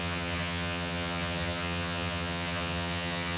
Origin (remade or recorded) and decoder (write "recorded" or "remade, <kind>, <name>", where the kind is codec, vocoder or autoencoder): remade, vocoder, HiFi-GAN